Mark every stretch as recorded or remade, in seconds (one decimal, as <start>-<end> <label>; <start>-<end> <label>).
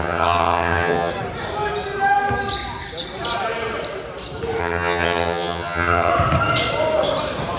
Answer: 0.0-1.1 remade; 1.1-4.6 recorded; 4.6-6.1 remade; 6.1-7.6 recorded